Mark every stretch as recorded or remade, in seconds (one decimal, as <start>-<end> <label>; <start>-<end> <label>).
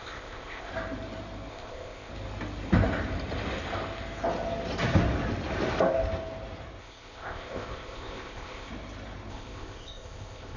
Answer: 0.0-0.7 remade; 0.7-1.5 recorded; 1.5-2.1 remade; 2.1-6.8 recorded; 6.8-8.7 remade; 8.7-9.3 recorded; 9.3-10.6 remade